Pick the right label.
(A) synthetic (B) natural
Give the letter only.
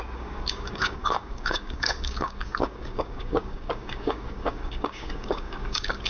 A